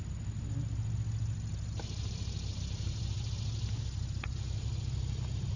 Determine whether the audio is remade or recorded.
recorded